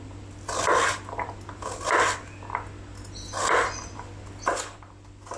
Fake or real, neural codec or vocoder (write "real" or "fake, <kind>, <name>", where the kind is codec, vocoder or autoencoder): real